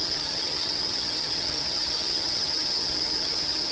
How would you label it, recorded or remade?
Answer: remade